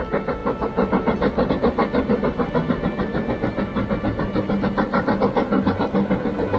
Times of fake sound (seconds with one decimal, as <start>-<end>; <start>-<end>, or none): none